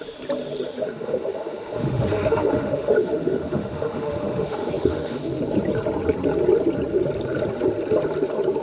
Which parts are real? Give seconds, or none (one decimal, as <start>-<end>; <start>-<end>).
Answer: 0.0-0.7; 5.4-8.6